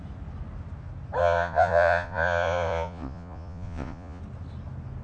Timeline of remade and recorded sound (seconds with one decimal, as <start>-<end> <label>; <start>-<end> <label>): 0.0-1.2 recorded; 1.2-4.2 remade; 4.2-5.0 recorded